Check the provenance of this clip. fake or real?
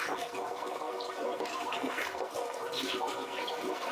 fake